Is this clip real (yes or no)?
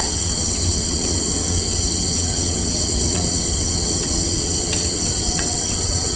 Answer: no